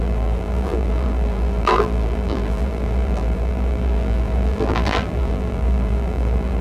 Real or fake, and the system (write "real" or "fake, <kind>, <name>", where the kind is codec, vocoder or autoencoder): fake, vocoder, BigVGAN v2